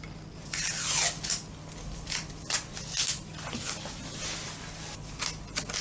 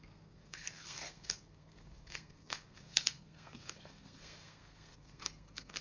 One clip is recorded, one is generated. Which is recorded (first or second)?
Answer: first